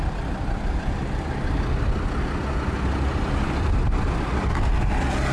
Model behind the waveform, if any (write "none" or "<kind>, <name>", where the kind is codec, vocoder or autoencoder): none